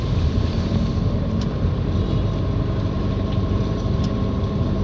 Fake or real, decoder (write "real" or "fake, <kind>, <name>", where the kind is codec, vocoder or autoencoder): fake, vocoder, BigVGAN v2